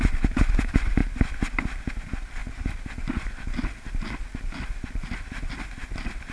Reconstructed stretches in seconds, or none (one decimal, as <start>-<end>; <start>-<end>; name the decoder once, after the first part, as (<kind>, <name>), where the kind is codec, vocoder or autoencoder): none